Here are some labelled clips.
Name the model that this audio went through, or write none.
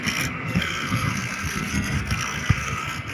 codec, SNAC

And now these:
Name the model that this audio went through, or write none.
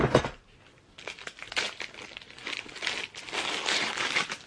none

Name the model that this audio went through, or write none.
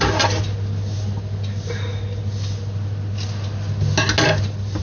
none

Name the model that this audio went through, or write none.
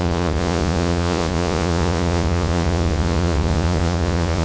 vocoder, Vocos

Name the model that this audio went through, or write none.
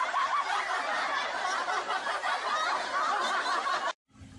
none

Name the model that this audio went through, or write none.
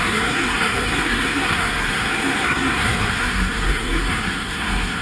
codec, SNAC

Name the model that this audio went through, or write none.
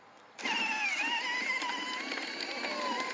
none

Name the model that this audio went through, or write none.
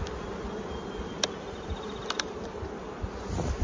none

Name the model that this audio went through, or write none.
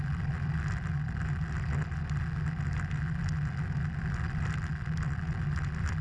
none